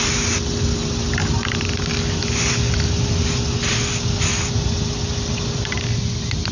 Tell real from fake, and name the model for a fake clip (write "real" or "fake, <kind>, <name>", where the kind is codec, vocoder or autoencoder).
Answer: real